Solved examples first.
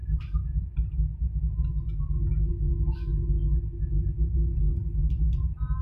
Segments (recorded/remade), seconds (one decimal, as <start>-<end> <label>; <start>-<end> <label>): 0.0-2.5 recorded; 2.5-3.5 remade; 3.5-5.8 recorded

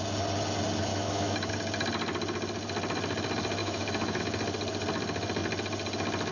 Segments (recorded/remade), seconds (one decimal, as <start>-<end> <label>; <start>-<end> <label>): 0.0-0.9 recorded; 0.9-1.5 remade; 1.5-3.6 recorded; 3.6-4.2 remade; 4.2-6.3 recorded

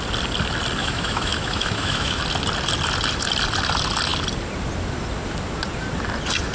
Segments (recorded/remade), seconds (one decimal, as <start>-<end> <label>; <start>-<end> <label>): 0.0-0.8 recorded; 0.8-2.2 remade; 2.2-6.5 recorded

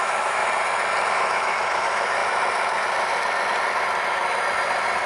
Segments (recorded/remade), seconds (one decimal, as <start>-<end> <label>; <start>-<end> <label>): 0.0-0.4 remade; 0.4-1.1 recorded; 1.1-2.2 remade; 2.2-5.1 recorded